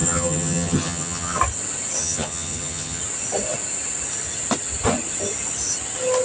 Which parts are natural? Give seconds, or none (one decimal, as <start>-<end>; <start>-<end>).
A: 1.4-2.0; 3.0-6.2